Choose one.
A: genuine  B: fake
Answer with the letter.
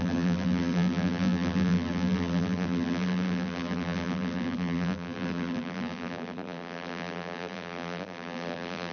B